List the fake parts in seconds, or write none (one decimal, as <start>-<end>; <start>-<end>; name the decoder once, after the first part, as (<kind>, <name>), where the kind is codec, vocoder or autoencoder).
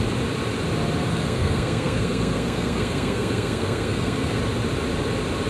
1.1-4.4 (codec, SNAC)